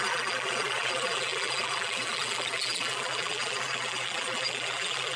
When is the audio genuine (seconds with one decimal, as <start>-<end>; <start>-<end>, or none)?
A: none